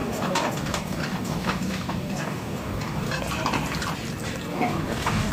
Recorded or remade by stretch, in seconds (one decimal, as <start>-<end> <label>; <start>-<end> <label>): 0.0-3.2 remade; 3.2-4.5 recorded; 4.5-5.3 remade